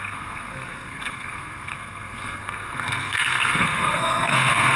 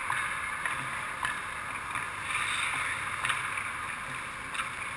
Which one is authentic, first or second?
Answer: second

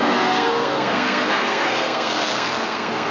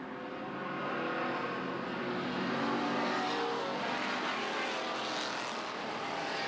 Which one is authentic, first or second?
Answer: second